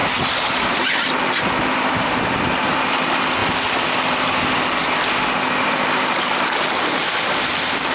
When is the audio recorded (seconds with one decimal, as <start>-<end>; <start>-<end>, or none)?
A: 3.4-5.7